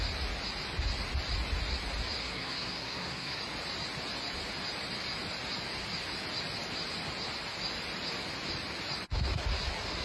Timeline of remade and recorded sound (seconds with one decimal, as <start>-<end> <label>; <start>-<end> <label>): 0.0-2.2 recorded; 2.2-3.4 remade; 3.4-10.0 recorded